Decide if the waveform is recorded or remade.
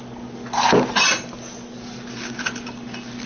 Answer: recorded